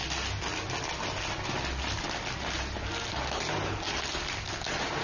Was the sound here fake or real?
real